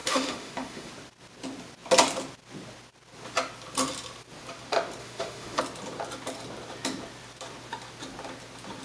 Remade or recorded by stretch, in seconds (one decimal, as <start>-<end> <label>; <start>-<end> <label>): 0.0-0.9 remade; 0.9-5.0 recorded; 5.0-5.6 remade; 5.6-8.8 recorded